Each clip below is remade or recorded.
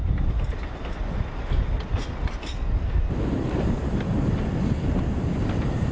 recorded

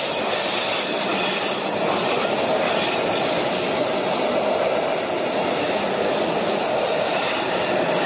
recorded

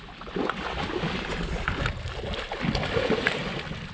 recorded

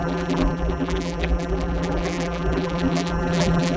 remade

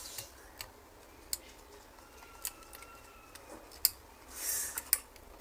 recorded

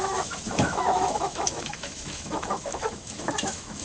remade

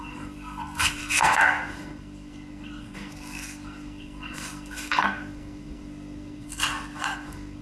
remade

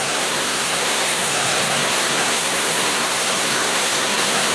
remade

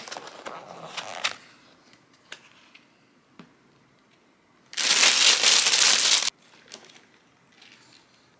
recorded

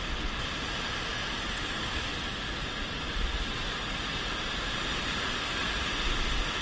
recorded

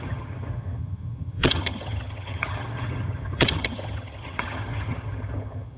remade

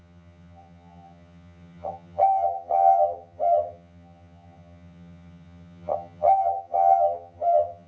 remade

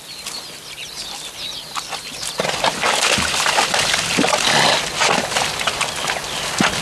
recorded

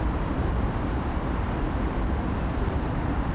remade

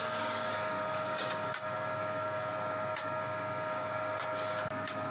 remade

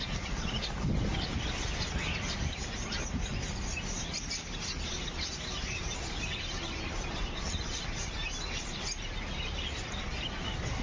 recorded